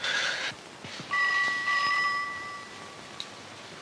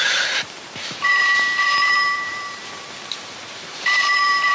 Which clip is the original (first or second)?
first